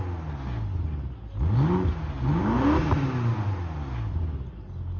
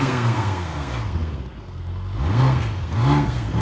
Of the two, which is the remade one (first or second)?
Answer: second